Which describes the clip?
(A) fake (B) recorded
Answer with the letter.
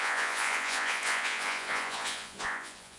A